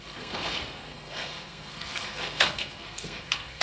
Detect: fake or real fake